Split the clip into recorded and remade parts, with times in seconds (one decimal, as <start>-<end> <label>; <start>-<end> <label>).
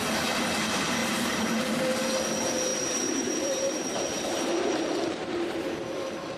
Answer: 0.0-1.0 recorded; 1.0-1.8 remade; 1.8-2.7 recorded; 2.7-6.4 remade